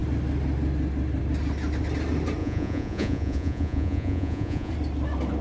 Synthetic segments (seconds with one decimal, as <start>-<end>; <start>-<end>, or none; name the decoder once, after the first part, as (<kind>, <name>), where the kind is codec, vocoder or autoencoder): 2.4-4.7 (vocoder, Vocos)